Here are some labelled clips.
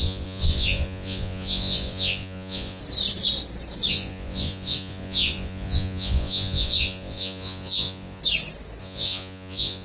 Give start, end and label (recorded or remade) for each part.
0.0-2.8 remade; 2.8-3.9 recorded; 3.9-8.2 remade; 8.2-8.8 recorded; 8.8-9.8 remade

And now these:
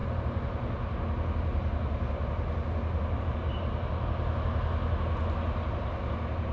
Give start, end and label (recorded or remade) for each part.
0.0-6.5 recorded

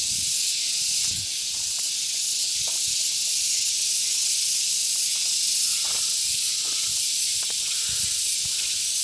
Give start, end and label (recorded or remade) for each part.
0.0-9.0 recorded

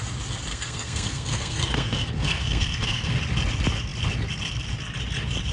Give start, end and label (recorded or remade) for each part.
0.0-0.5 recorded; 0.5-3.1 remade; 3.1-5.5 recorded

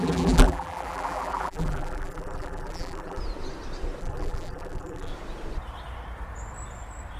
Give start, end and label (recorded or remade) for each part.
0.0-3.2 remade; 3.2-4.0 recorded; 4.0-5.1 remade; 5.1-7.2 recorded